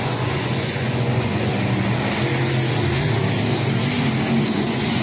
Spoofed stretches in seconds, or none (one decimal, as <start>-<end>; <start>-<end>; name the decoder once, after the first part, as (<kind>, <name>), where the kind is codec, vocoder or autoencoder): 0.0-1.5 (vocoder, Vocos); 4.4-5.0